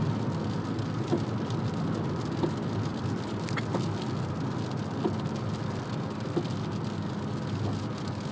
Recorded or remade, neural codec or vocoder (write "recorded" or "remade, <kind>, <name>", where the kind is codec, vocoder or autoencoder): recorded